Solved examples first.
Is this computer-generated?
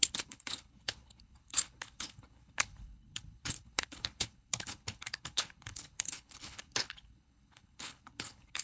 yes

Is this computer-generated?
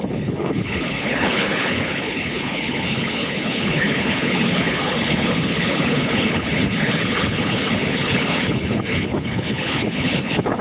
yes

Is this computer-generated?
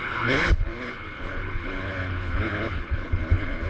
yes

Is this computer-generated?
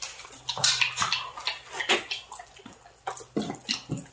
no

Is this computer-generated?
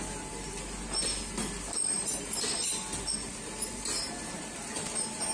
no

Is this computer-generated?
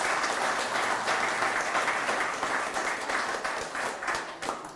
no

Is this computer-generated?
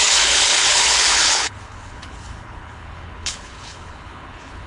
yes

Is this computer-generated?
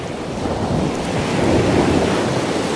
no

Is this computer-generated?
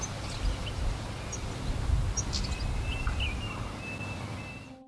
no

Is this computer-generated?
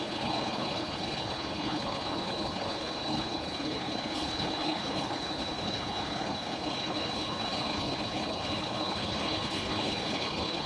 yes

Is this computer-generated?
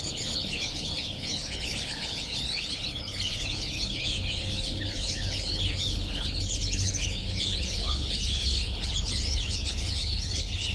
yes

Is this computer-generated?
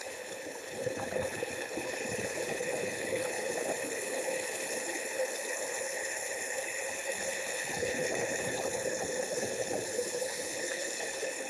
yes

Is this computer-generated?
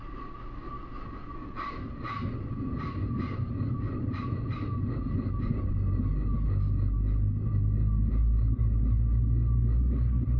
no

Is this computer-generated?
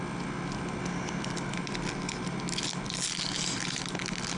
no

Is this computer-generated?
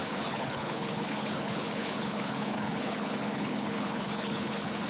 yes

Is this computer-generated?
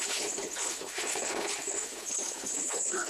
yes